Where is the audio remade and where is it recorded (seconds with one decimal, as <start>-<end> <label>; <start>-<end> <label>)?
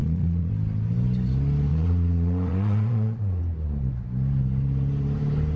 0.0-0.5 remade; 0.5-1.7 recorded; 1.7-3.4 remade; 3.4-5.6 recorded